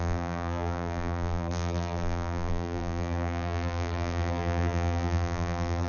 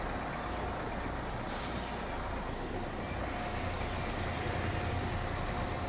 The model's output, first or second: first